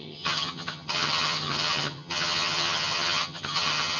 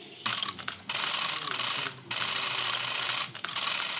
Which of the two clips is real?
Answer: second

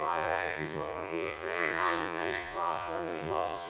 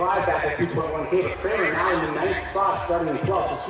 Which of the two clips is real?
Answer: second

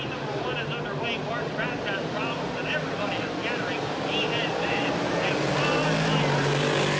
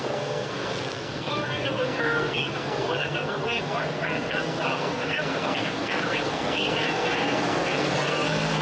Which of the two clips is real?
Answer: first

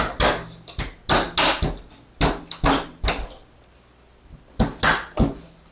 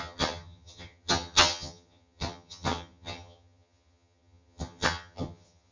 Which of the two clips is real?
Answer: first